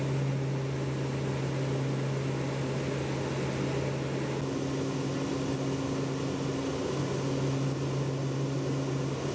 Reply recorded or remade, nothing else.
recorded